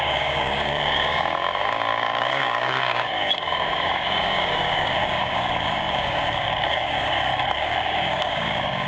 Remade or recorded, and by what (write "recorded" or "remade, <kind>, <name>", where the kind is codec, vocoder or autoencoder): remade, codec, DAC